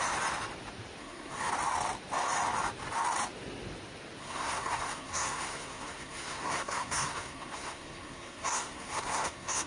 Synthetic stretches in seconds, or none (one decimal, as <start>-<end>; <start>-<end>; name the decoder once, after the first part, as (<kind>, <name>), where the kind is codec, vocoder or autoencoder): 1.0-1.5 (codec, SNAC); 4.2-9.7